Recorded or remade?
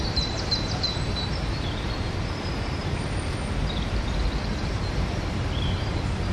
remade